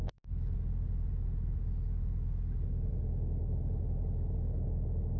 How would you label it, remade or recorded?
recorded